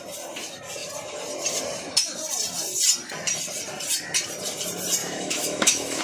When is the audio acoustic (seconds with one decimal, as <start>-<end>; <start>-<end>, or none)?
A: 0.0-5.0